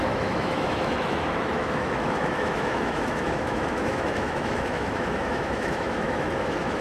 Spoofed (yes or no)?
yes